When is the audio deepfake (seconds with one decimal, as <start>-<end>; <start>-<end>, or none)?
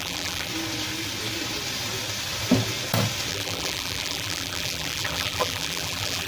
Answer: 0.0-0.5; 3.3-6.3